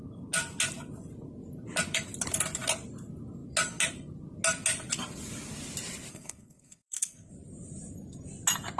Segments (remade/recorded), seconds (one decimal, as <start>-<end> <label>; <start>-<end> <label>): 0.0-6.1 recorded; 6.1-7.3 remade; 7.3-8.8 recorded